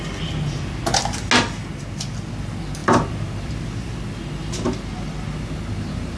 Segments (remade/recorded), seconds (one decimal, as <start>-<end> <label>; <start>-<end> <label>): 0.0-6.2 recorded